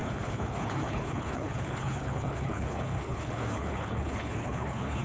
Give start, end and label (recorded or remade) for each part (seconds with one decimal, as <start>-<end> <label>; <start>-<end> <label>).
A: 0.0-5.0 remade